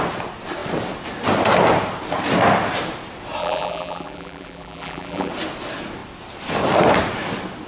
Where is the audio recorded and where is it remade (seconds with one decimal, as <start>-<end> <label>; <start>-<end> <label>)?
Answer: 0.0-3.4 recorded; 3.4-5.3 remade; 5.3-7.7 recorded